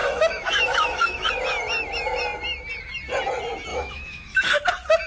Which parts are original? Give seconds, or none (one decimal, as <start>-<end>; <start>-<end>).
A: 1.3-3.7; 4.5-5.1